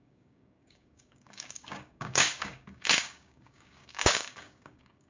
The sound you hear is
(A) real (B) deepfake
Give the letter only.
B